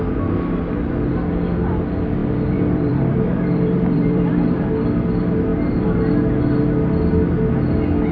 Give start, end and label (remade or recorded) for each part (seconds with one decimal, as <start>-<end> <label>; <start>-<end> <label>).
0.0-2.2 recorded; 2.2-4.3 remade; 4.3-5.5 recorded; 5.5-6.2 remade; 6.2-8.1 recorded